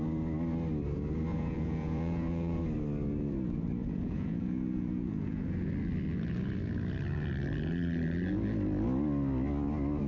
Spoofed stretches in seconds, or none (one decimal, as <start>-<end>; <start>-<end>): 1.3-2.6; 3.8-5.7